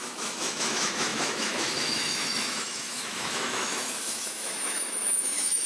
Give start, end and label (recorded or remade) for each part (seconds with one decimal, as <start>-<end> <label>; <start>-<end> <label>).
0.0-5.7 remade